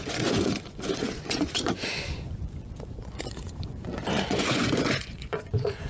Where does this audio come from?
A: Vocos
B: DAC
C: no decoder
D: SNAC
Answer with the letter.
A